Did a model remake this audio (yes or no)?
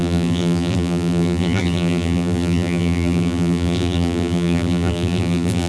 yes